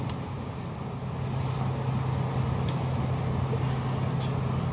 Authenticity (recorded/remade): recorded